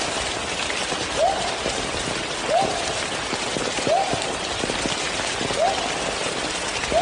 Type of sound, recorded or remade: recorded